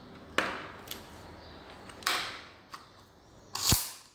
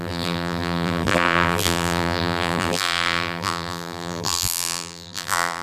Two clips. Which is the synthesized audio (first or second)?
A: second